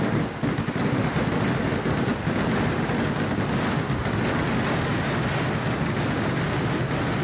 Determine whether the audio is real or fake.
real